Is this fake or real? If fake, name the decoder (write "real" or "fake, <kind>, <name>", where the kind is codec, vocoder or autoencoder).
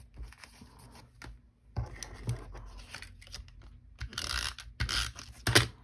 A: real